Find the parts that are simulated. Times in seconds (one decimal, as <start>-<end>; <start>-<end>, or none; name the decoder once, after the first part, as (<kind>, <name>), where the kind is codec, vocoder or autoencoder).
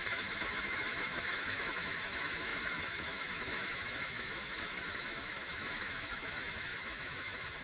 0.0-7.6 (autoencoder, DAC-VAE)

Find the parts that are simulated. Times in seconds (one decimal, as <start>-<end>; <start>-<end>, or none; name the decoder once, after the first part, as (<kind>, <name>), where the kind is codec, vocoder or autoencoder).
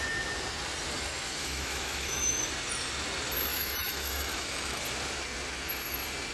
1.4-2.5 (autoencoder, DAC-VAE); 3.5-4.8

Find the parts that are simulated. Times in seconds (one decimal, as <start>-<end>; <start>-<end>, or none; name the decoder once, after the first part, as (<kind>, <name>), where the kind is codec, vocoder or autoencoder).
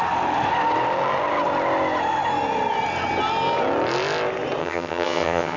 4.6-5.6 (vocoder, HiFi-GAN)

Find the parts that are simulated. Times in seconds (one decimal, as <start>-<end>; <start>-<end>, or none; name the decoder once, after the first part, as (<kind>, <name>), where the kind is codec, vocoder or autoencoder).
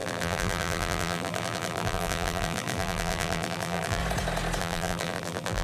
0.0-4.0 (vocoder, BigVGAN v2); 4.6-5.6